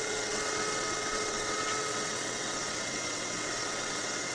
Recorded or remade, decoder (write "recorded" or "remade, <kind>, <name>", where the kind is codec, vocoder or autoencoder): remade, vocoder, WaveNeXt